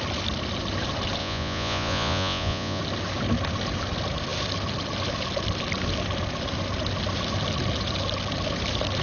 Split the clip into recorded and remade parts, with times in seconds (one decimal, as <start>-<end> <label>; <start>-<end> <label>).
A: 0.0-1.2 recorded; 1.2-2.8 remade; 2.8-9.0 recorded